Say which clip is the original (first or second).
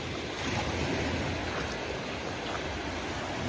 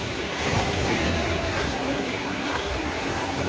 first